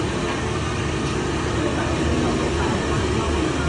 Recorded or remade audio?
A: recorded